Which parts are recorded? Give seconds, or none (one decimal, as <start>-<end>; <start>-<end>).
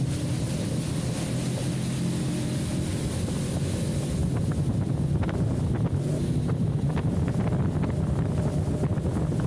0.0-9.5